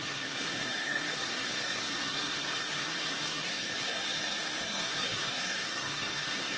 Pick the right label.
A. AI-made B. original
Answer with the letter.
A